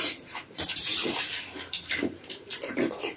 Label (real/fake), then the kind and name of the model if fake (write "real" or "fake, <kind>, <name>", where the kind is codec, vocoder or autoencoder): fake, vocoder, BigVGAN v2